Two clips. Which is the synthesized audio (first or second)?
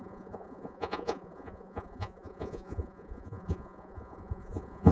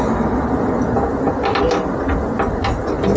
first